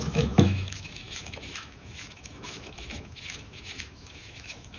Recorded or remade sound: remade